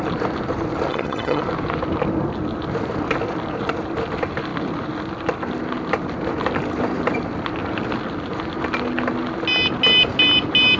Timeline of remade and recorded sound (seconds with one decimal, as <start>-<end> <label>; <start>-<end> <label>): 0.0-0.9 recorded; 0.9-1.4 remade; 1.4-10.8 recorded